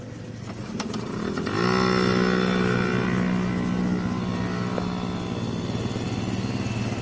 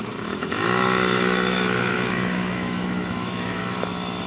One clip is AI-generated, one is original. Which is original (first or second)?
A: first